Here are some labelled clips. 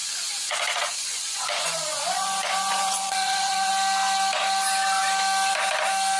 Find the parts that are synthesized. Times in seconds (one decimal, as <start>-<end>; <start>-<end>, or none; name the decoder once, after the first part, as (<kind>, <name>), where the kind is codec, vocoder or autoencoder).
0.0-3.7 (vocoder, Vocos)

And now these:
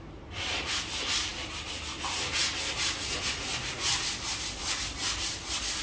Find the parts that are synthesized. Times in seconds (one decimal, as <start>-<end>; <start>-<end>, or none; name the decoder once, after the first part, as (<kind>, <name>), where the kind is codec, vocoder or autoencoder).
none

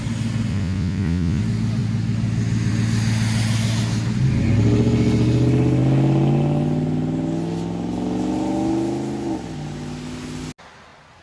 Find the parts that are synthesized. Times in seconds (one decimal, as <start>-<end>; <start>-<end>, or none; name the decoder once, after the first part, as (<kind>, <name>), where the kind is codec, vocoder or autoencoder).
0.5-1.4 (vocoder, Vocos)